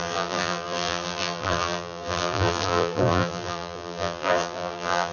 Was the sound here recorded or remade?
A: remade